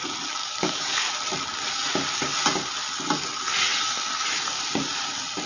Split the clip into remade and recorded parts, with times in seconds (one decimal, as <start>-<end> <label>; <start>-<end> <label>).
0.0-0.4 recorded; 0.4-1.1 remade; 1.1-5.5 recorded